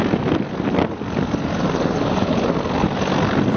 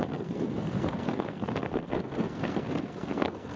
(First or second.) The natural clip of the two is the first